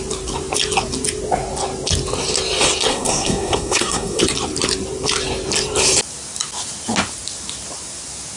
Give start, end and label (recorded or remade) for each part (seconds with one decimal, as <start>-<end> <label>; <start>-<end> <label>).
0.0-2.9 recorded; 2.9-4.2 remade; 4.2-8.4 recorded